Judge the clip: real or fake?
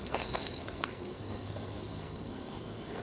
fake